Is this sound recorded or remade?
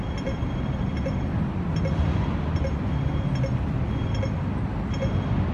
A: recorded